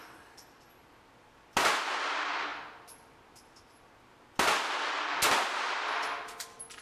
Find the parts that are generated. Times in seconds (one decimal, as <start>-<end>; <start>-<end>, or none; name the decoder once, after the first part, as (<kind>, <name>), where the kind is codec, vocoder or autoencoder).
none